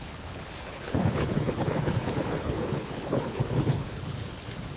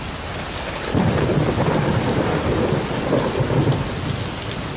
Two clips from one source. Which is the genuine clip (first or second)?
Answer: second